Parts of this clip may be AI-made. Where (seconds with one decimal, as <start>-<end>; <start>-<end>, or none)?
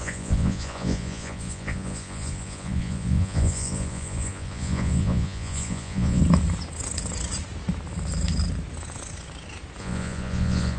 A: 0.0-6.2; 9.8-10.8